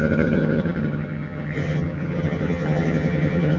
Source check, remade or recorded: remade